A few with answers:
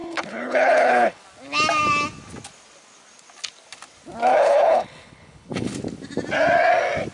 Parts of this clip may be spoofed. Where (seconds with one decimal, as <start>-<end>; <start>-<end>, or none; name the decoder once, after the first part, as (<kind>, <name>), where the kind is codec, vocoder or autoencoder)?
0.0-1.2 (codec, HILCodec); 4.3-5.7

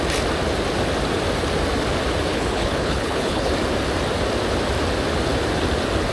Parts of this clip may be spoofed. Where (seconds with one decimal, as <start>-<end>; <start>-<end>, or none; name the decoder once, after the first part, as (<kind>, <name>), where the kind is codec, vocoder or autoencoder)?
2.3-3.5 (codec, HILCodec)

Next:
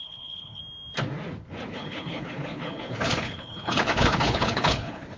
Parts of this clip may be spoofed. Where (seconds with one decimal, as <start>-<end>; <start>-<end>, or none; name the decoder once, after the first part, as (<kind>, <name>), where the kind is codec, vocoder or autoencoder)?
0.0-0.6 (codec, HILCodec); 1.7-5.2